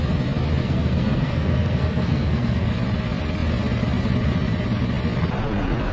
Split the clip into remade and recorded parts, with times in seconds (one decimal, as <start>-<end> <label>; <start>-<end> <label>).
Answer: 0.0-0.6 recorded; 0.6-2.7 remade; 2.7-5.9 recorded